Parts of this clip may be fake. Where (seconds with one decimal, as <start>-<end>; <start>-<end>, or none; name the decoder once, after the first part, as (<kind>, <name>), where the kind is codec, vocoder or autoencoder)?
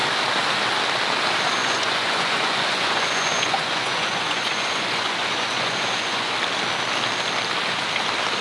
1.6-6.3 (vocoder, Vocos)